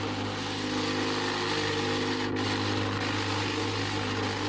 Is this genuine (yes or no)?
yes